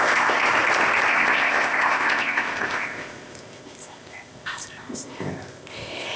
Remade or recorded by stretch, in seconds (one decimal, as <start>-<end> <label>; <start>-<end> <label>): 0.0-0.5 remade; 0.5-1.1 recorded; 1.1-6.2 remade